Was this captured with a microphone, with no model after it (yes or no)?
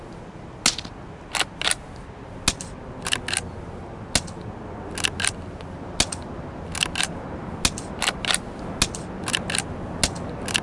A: yes